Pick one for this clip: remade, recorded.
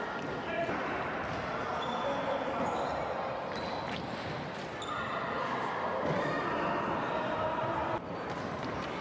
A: recorded